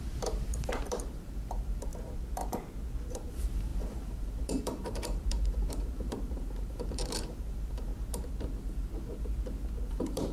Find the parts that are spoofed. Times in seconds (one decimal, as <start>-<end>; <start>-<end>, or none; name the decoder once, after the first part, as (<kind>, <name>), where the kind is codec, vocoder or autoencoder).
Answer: 0.0-1.9 (vocoder, BigVGAN v2); 3.1-7.9; 9.9-10.3